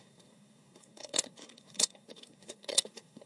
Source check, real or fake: fake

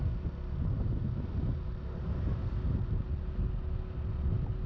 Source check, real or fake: real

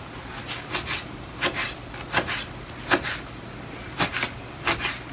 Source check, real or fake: real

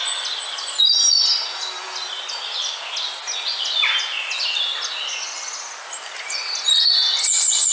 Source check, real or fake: real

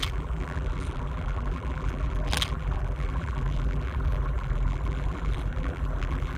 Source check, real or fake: fake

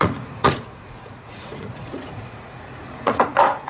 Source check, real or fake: fake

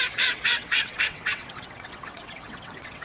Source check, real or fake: fake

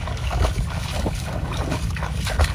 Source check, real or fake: fake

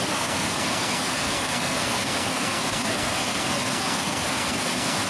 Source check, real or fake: fake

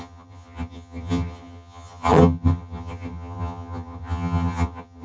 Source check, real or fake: fake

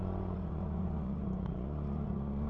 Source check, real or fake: fake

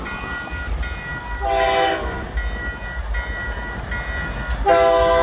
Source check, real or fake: real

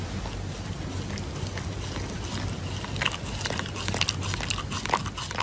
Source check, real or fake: real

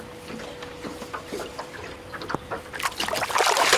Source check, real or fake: real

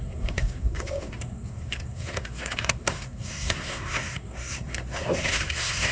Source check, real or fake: fake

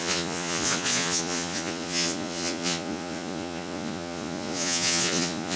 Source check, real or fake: fake